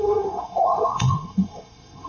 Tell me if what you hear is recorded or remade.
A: remade